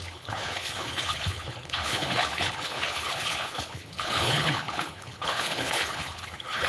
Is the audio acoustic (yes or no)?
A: no